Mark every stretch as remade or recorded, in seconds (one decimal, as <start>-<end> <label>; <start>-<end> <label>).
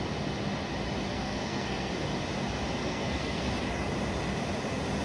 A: 0.0-1.1 recorded; 1.1-1.9 remade; 1.9-2.8 recorded; 2.8-3.5 remade; 3.5-5.0 recorded